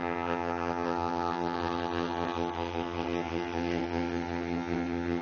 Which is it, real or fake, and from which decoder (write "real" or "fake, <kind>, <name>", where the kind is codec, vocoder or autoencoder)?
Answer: fake, vocoder, HiFi-GAN